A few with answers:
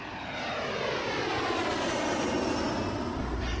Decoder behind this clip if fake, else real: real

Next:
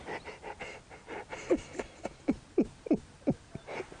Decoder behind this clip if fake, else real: real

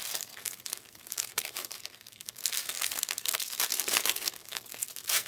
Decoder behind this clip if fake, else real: fake, codec, SNAC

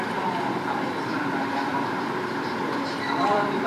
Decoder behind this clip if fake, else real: fake, vocoder, BigVGAN v2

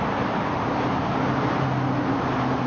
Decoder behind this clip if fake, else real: real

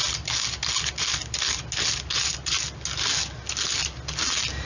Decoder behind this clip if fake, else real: real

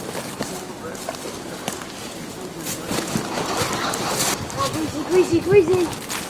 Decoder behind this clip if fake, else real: real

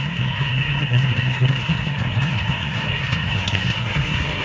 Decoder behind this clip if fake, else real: fake, codec, SNAC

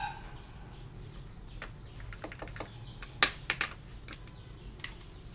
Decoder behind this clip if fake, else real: real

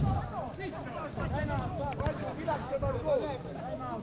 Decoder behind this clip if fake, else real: fake, vocoder, BigVGAN v2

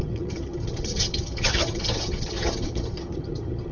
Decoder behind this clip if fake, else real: fake, vocoder, HiFi-GAN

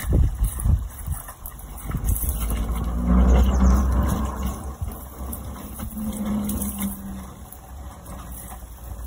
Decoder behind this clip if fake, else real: real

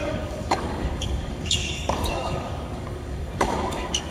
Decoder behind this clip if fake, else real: fake, codec, DAC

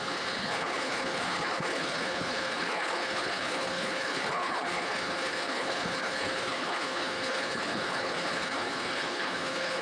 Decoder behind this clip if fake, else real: fake, codec, HILCodec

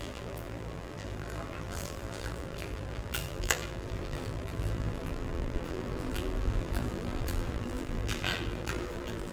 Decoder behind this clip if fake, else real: fake, vocoder, BigVGAN v2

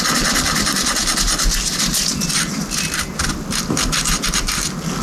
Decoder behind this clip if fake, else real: real